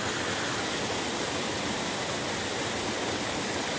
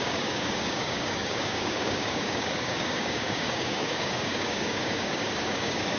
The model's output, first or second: second